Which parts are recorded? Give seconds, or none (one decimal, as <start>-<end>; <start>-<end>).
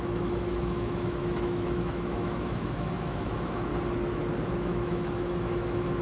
3.7-4.5